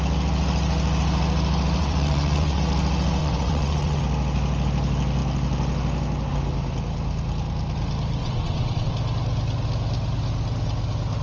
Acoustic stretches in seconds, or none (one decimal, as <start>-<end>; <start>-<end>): 0.0-1.8; 2.6-3.2; 4.0-8.2; 8.9-11.2